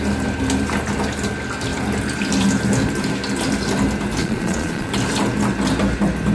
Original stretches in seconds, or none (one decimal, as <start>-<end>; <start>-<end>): 0.0-4.2; 4.9-6.3